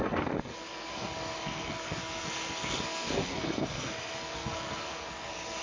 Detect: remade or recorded remade